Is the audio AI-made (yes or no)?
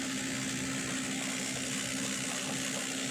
no